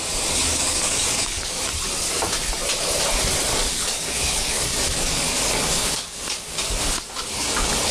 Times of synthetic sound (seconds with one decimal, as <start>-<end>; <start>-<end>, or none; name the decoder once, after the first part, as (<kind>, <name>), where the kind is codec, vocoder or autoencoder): 0.5-1.6 (codec, DAC); 3.5-6.8